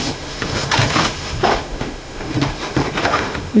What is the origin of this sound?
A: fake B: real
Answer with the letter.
A